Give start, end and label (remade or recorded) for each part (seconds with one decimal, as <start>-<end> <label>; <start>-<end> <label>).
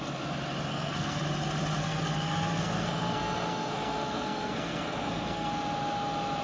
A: 0.0-0.7 recorded; 0.7-1.2 remade; 1.2-1.8 recorded; 1.8-5.5 remade; 5.5-6.4 recorded